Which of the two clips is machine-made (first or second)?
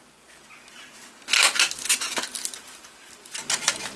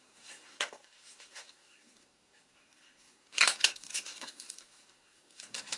second